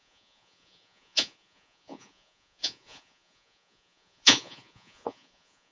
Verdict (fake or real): fake